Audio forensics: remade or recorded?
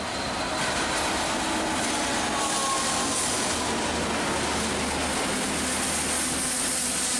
recorded